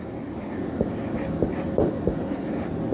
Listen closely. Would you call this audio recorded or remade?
recorded